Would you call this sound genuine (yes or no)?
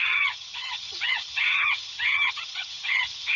no